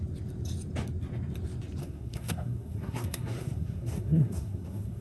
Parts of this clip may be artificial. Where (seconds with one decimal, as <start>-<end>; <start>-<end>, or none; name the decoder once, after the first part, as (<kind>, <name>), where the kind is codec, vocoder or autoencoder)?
1.8-5.0 (codec, SNAC)